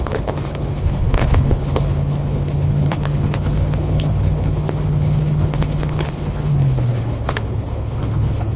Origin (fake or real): fake